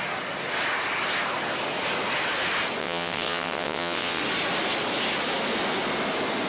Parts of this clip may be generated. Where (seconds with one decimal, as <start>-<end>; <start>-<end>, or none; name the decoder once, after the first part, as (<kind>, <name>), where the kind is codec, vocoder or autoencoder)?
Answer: 2.8-4.2 (vocoder, WaveNeXt)